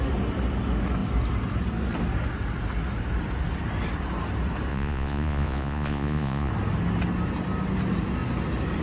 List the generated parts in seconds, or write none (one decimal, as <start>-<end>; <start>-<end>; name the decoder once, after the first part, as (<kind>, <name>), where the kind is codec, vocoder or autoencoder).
4.7-6.5 (vocoder, Vocos)